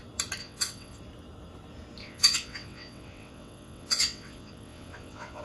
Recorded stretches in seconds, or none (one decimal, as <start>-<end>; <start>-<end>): 0.0-0.4; 1.0-2.0